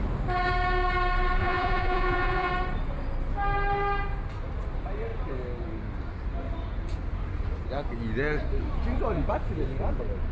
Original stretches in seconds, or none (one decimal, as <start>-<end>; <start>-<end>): 0.0-1.4; 2.5-10.3